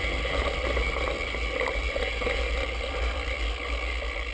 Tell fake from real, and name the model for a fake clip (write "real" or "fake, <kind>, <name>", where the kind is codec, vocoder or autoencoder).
real